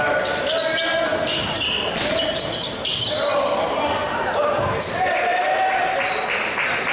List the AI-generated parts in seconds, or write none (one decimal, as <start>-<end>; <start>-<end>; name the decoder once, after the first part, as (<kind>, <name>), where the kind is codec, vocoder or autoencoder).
none